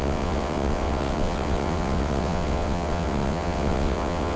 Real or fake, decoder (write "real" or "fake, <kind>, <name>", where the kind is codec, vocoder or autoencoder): fake, vocoder, WaveNeXt